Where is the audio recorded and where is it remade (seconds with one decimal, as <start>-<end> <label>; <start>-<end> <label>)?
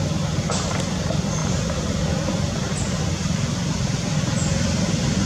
0.0-5.3 recorded